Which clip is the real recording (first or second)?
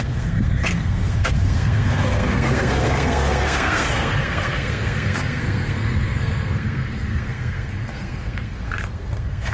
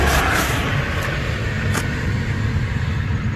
second